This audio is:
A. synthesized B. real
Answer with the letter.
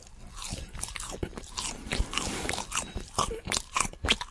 B